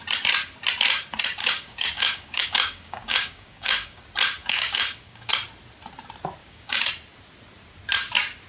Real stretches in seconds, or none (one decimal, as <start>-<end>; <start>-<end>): 0.0-1.4; 4.0-4.4; 5.3-6.4; 6.9-8.5